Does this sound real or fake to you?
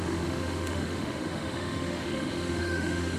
fake